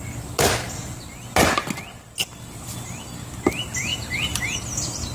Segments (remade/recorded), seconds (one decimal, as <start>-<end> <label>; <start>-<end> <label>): 0.0-3.9 recorded; 3.9-4.6 remade; 4.6-5.1 recorded